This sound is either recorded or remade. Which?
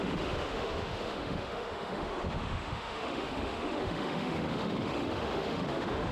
remade